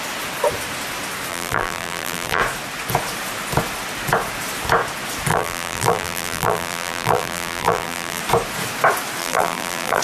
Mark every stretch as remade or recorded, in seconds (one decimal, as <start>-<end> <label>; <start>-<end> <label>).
0.0-1.3 recorded; 1.3-2.4 remade; 2.4-5.3 recorded; 5.3-8.2 remade; 8.2-9.2 recorded; 9.2-10.0 remade